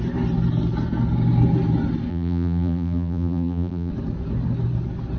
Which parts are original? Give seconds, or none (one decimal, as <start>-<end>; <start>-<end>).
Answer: 0.0-2.1; 3.9-5.2